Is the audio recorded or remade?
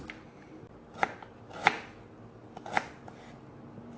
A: recorded